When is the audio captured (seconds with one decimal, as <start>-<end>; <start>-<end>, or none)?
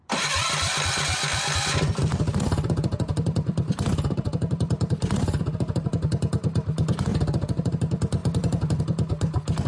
0.0-1.3; 4.9-7.1; 7.7-8.2; 8.8-9.7